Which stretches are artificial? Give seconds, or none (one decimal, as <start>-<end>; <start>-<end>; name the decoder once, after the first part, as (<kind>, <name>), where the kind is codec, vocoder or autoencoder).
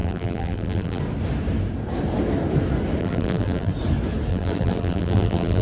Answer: 0.0-1.0 (vocoder, BigVGAN v2); 3.0-3.7; 4.3-5.6